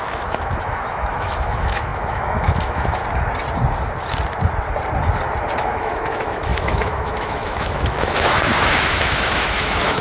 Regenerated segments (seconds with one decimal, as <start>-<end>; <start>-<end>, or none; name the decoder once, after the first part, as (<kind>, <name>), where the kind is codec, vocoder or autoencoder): 0.0-3.0 (autoencoder, DAC-VAE); 5.6-10.0

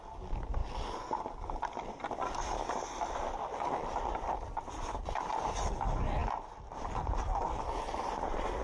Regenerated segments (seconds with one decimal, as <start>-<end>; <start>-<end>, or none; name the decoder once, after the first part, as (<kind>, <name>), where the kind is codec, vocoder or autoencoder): none